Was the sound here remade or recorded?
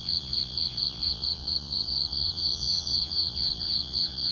remade